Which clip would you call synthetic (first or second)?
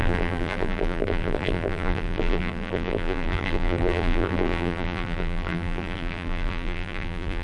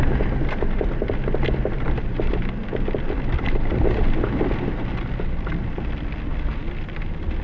first